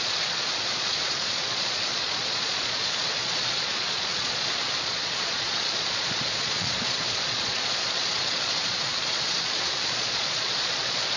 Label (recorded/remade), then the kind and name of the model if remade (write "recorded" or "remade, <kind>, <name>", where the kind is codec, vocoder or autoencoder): remade, vocoder, Vocos